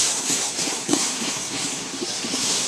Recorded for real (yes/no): no